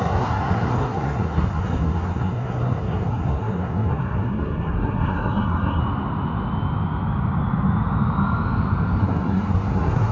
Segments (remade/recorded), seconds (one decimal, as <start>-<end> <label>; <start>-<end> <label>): 0.0-5.8 remade; 5.8-9.0 recorded; 9.0-10.1 remade